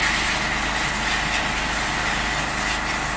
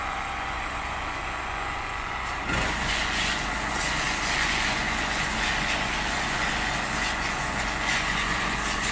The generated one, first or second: second